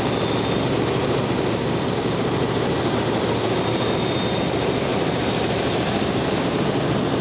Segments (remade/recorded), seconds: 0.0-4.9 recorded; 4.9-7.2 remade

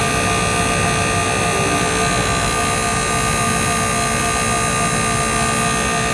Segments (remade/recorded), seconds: 0.0-6.1 recorded

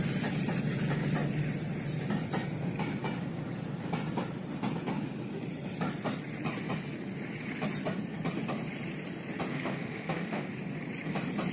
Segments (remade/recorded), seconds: 0.0-9.5 recorded; 9.5-10.5 remade; 10.5-11.5 recorded

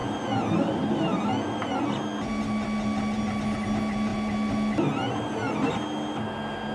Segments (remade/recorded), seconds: 0.0-6.7 recorded

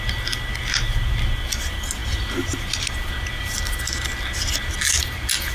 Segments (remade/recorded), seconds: 0.0-5.5 recorded

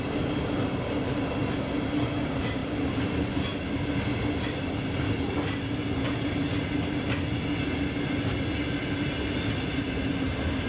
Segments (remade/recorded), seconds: 0.0-10.7 recorded

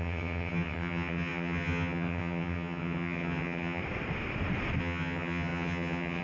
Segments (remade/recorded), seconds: 0.0-3.8 remade; 3.8-4.8 recorded; 4.8-6.2 remade

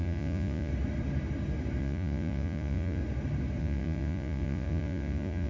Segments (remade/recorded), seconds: 0.0-0.7 remade; 0.7-1.8 recorded; 1.8-3.0 remade; 3.0-3.6 recorded; 3.6-5.5 remade